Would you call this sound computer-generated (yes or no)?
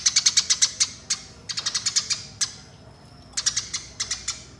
no